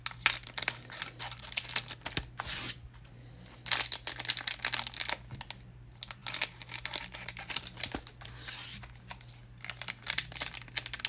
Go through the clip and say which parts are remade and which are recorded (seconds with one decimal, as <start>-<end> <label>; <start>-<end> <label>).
0.0-11.1 recorded